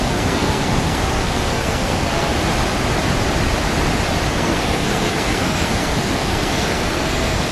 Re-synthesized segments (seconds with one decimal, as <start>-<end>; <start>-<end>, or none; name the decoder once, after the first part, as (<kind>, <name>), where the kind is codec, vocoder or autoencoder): 0.0-2.3 (codec, SNAC); 4.3-7.5